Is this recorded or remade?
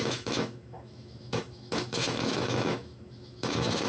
remade